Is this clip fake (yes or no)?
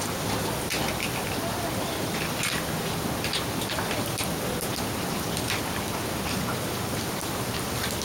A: no